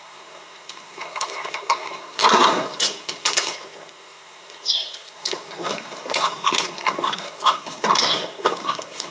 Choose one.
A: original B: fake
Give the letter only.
B